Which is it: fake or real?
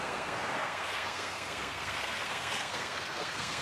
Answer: fake